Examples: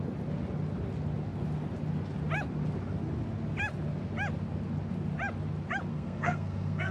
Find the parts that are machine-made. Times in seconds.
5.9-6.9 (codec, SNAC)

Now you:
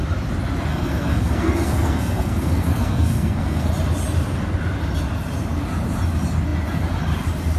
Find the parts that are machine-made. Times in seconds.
0.7-3.7 (codec, SNAC)

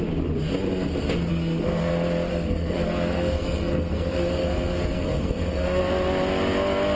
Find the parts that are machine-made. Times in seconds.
1.3-1.9 (codec, SNAC); 2.3-5.8

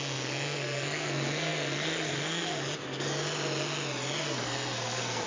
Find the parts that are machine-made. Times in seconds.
0.0-2.5 (codec, SNAC); 4.2-5.3